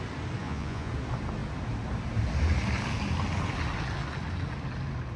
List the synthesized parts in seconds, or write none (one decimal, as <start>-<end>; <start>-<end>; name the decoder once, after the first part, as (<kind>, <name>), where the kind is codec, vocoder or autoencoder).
0.4-0.9 (vocoder, Vocos)